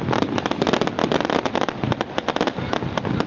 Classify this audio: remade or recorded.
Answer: recorded